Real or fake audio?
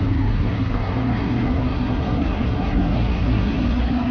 fake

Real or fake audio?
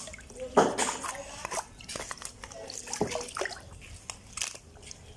real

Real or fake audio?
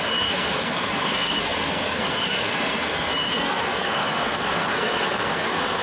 fake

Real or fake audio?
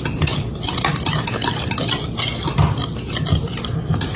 real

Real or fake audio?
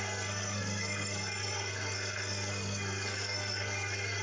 fake